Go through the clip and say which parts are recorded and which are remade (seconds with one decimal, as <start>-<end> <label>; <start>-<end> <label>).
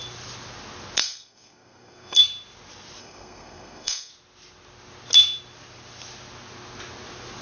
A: 0.0-1.0 recorded; 1.0-2.2 remade; 2.2-3.0 recorded; 3.0-4.1 remade; 4.1-7.4 recorded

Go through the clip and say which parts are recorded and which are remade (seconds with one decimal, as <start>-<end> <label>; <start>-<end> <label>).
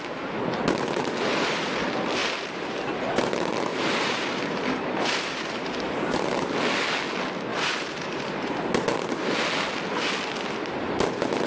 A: 0.0-2.2 recorded; 2.2-3.0 remade; 3.0-3.7 recorded; 3.7-6.5 remade; 6.5-7.5 recorded; 7.5-8.6 remade; 8.6-11.5 recorded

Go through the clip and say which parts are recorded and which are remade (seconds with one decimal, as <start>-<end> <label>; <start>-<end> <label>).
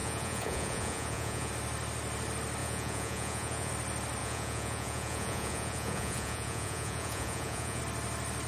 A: 0.0-1.5 remade; 1.5-2.6 recorded; 2.6-3.7 remade; 3.7-4.2 recorded; 4.2-7.8 remade; 7.8-8.5 recorded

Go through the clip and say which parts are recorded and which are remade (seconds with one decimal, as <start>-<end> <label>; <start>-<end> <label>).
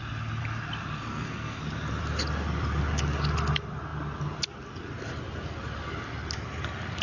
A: 0.0-1.1 recorded; 1.1-1.6 remade; 1.6-7.0 recorded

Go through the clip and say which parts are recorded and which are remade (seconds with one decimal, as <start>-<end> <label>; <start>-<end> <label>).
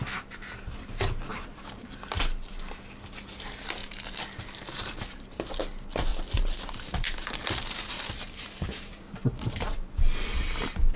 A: 0.0-1.3 recorded; 1.3-2.0 remade; 2.0-3.8 recorded; 3.8-5.4 remade; 5.4-6.1 recorded; 6.1-11.0 remade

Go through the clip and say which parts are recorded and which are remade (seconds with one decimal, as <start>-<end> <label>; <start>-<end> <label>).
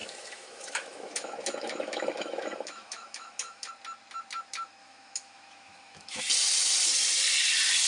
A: 0.0-3.7 remade; 3.7-4.8 recorded; 4.8-6.2 remade; 6.2-7.9 recorded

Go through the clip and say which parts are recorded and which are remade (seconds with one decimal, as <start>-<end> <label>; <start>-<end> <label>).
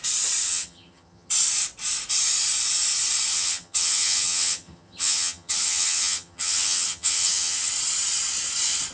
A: 0.0-0.4 recorded; 0.4-1.3 remade; 1.3-3.3 recorded; 3.3-7.7 remade; 7.7-8.9 recorded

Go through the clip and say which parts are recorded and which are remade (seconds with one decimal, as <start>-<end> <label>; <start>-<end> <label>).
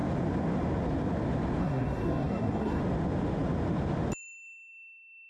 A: 0.0-1.6 recorded; 1.6-2.8 remade; 2.8-5.3 recorded